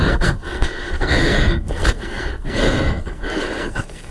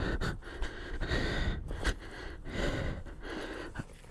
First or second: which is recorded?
second